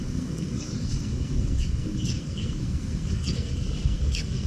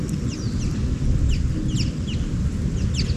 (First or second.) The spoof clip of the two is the first